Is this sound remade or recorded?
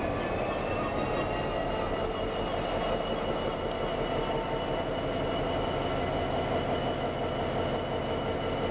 recorded